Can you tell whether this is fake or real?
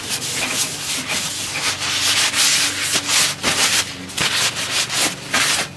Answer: real